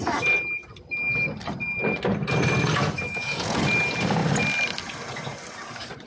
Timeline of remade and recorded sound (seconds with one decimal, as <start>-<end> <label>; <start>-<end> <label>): 0.0-3.1 recorded; 3.1-3.6 remade; 3.6-6.1 recorded